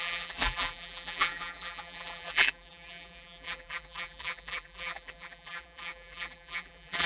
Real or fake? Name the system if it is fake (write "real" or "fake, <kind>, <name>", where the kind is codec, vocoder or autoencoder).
fake, vocoder, BigVGAN v2